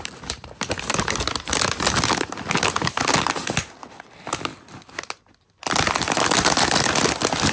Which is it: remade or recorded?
recorded